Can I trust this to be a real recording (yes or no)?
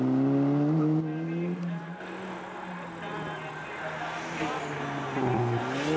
yes